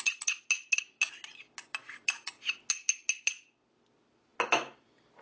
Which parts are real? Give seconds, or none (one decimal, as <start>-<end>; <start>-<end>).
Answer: 0.0-5.2